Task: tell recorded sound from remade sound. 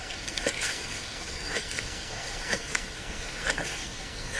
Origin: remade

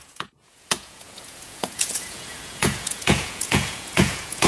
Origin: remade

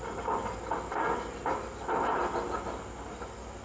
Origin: recorded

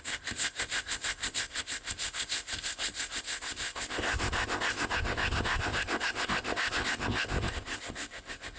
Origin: remade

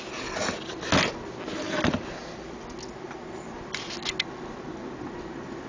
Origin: recorded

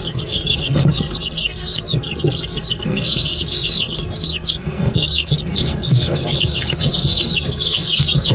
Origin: remade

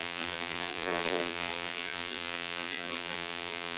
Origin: remade